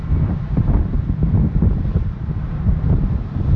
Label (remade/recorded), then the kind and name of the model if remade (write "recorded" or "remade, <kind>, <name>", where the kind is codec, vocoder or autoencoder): remade, vocoder, BigVGAN v2